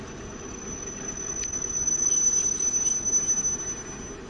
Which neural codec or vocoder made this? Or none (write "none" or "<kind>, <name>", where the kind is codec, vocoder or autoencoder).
none